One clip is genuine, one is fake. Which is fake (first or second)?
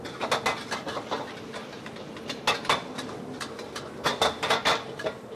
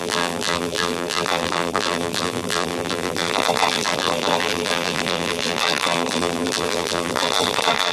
second